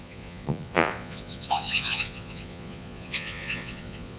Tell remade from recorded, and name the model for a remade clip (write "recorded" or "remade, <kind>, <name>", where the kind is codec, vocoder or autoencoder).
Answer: remade, vocoder, Vocos